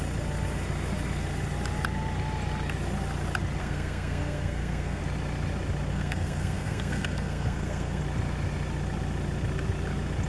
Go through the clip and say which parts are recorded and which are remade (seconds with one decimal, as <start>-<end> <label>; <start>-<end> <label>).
0.0-3.6 recorded; 3.6-5.0 remade; 5.0-5.9 recorded; 5.9-8.0 remade; 8.0-10.3 recorded